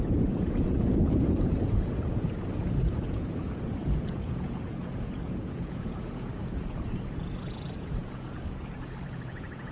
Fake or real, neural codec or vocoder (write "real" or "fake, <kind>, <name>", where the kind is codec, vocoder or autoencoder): fake, vocoder, Vocos